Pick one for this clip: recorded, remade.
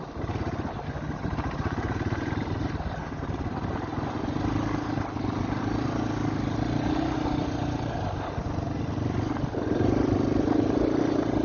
recorded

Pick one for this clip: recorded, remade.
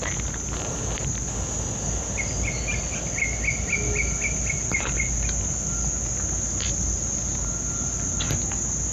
recorded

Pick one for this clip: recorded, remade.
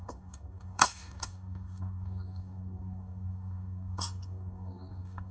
remade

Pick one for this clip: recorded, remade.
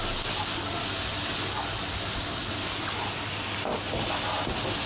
recorded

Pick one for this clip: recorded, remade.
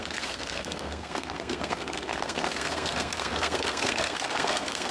remade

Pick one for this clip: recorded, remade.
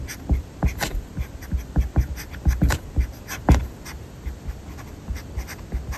recorded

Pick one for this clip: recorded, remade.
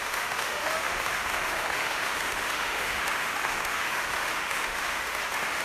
remade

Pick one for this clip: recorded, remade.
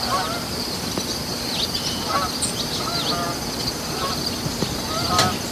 recorded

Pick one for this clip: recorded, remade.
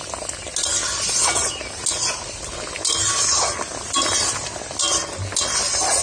recorded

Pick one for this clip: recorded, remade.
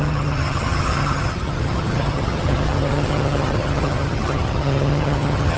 remade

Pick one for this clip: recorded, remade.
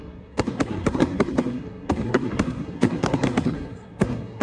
remade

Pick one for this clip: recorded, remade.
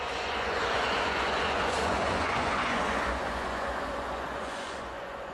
remade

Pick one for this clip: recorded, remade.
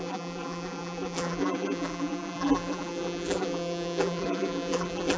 remade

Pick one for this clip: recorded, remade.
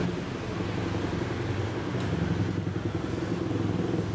recorded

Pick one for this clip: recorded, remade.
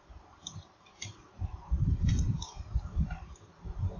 remade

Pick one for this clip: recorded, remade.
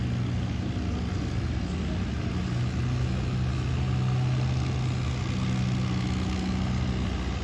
recorded